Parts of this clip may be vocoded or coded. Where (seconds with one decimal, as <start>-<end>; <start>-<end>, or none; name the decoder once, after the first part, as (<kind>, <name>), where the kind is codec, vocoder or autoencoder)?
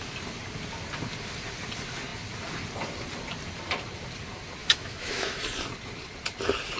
4.6-5.4 (autoencoder, DAC-VAE)